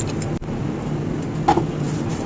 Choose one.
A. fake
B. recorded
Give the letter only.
B